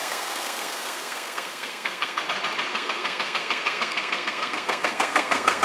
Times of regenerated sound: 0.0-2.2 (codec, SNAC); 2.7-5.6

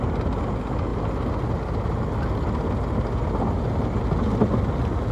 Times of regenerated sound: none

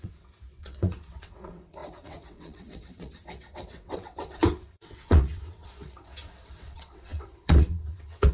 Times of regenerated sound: 0.0-8.3 (vocoder, WaveNeXt)